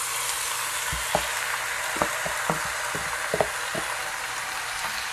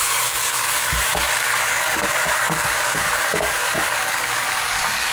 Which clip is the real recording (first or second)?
first